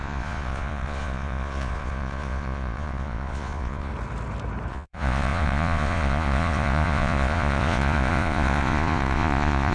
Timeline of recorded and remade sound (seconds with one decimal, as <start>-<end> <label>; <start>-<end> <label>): 0.0-3.9 remade; 3.9-4.7 recorded; 4.7-9.7 remade